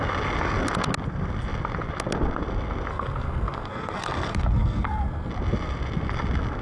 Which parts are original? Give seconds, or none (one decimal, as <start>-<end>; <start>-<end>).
0.0-2.9; 5.3-6.6